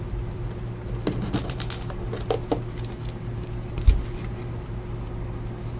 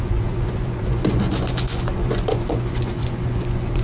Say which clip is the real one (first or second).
first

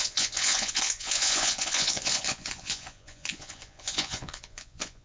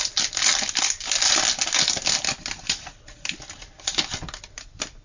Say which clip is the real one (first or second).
second